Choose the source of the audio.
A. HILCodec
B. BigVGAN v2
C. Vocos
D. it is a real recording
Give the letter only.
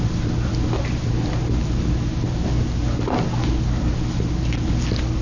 D